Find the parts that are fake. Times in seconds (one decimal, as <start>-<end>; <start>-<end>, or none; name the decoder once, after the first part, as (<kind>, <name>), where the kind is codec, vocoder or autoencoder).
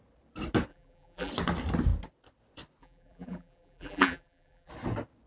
0.7-1.3 (vocoder, BigVGAN v2); 2.8-4.7